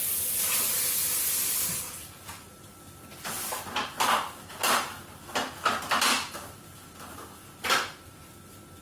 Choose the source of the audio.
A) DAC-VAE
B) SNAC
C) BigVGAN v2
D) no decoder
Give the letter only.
C